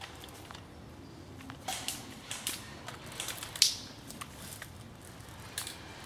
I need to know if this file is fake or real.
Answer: real